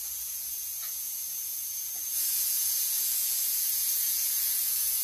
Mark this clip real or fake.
fake